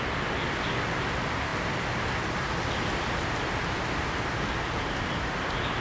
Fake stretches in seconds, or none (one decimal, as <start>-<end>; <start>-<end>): none

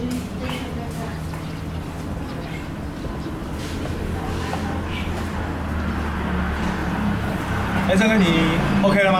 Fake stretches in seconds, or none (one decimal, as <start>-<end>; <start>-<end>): 6.8-8.1

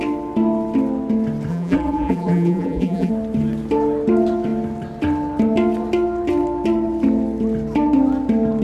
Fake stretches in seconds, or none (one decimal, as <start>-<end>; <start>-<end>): 1.5-3.1

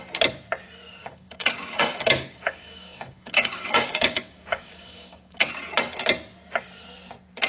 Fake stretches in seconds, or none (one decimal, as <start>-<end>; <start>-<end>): 1.0-5.5

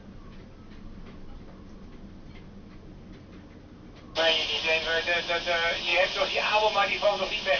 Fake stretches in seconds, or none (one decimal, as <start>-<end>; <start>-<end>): none

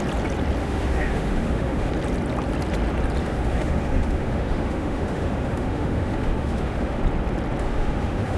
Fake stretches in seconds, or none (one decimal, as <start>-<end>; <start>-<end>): 0.6-1.9; 3.2-7.0; 7.6-8.4

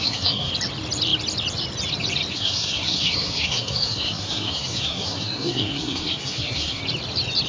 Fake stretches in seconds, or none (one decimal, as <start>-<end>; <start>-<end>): 0.0-0.5; 2.3-6.8

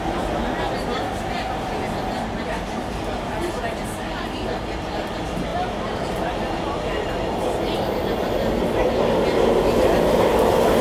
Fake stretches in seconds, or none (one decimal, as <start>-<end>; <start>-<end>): none